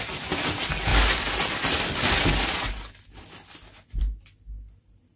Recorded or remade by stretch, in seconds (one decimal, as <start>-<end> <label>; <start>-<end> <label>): 0.0-5.2 recorded